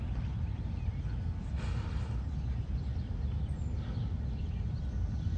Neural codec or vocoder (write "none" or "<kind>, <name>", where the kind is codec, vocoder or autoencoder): none